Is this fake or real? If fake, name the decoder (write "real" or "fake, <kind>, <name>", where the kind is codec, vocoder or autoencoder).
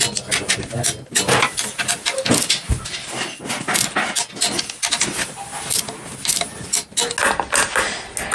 real